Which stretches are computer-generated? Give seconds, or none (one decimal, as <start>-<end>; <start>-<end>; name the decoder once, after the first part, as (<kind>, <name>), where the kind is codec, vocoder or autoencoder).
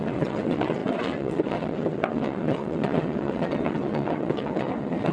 0.0-5.1 (vocoder, WaveNeXt)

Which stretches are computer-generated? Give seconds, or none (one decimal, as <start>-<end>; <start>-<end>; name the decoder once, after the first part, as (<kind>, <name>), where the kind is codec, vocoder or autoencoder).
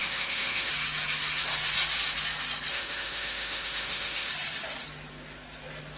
0.0-0.7 (autoencoder, DAC-VAE); 2.7-4.3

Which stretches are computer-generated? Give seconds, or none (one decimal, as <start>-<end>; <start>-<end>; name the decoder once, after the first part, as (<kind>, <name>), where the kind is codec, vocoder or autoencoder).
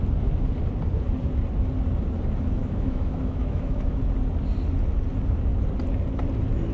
2.6-4.0 (autoencoder, DAC-VAE)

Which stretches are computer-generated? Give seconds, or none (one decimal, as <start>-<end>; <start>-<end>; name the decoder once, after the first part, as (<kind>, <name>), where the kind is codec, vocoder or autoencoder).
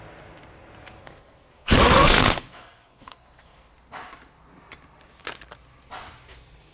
1.0-3.7 (codec, SNAC)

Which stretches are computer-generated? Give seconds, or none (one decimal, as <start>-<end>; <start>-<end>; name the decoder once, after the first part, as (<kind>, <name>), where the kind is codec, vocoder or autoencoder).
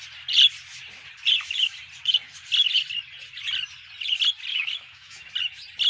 4.5-5.3 (autoencoder, DAC-VAE)